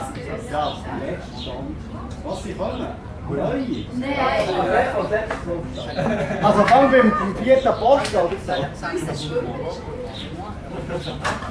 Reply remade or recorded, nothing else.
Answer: remade